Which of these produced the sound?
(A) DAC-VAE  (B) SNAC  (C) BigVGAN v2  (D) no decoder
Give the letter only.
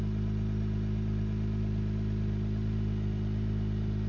D